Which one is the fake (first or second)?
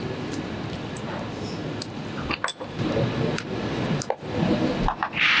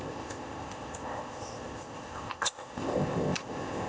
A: second